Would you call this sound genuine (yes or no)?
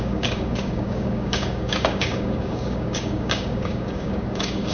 no